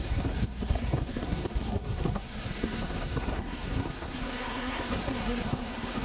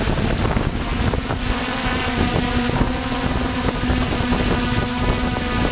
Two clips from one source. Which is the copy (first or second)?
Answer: first